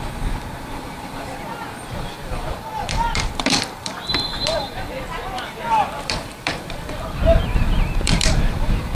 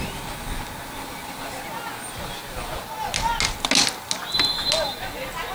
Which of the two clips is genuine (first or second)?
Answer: second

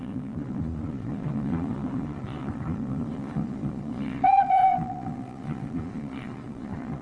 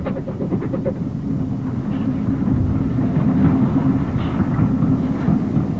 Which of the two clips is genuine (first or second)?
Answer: second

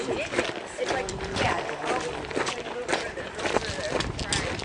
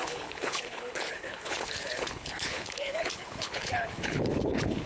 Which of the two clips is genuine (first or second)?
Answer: first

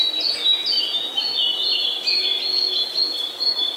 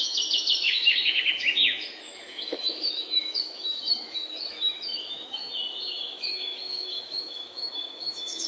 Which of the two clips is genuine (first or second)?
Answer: first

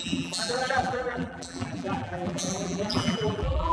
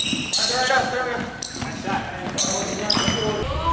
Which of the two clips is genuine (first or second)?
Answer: second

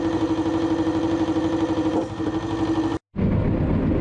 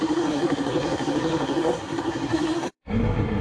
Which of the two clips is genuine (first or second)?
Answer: first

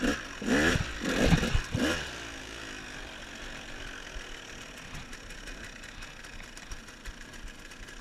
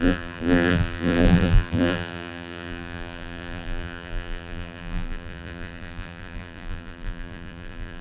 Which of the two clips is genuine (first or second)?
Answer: first